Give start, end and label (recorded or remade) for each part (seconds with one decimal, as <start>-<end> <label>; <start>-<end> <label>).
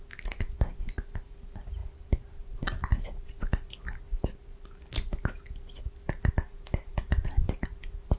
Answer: 0.0-6.9 recorded; 6.9-7.4 remade; 7.4-8.2 recorded